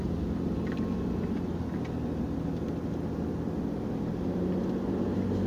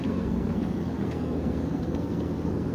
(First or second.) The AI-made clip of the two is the second